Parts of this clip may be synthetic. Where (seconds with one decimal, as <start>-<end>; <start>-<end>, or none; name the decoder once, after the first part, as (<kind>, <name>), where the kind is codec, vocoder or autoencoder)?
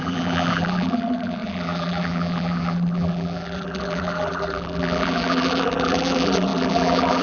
0.0-7.2 (vocoder, BigVGAN v2)